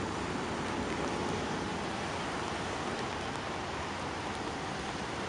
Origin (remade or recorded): recorded